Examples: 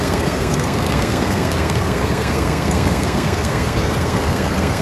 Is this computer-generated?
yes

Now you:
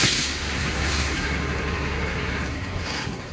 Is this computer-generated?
yes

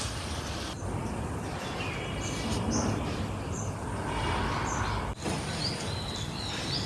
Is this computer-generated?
no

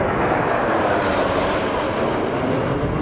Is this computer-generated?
no